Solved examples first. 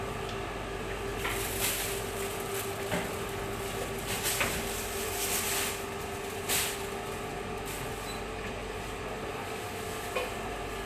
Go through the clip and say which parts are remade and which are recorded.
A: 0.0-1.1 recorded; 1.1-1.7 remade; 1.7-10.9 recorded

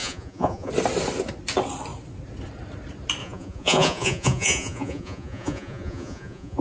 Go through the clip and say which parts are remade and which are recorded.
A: 0.0-0.7 remade; 0.7-3.2 recorded; 3.2-6.6 remade

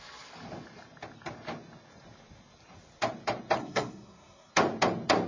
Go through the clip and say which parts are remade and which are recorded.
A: 0.0-3.6 recorded; 3.6-4.5 remade; 4.5-5.3 recorded

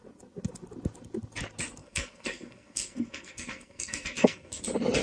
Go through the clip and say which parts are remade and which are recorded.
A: 0.0-1.8 recorded; 1.8-4.6 remade; 4.6-5.0 recorded

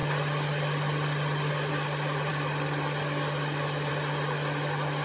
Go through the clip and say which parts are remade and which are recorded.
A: 0.0-5.0 recorded

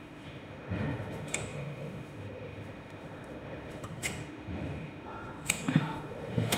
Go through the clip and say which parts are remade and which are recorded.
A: 0.0-6.6 remade

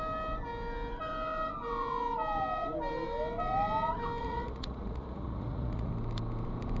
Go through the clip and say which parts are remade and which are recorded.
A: 0.0-4.2 recorded; 4.2-5.9 remade; 5.9-6.8 recorded